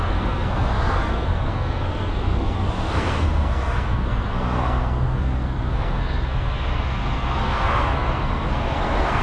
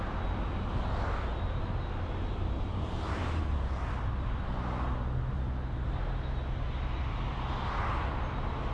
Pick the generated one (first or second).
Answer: first